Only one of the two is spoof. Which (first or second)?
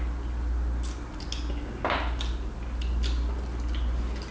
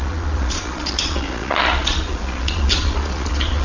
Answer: second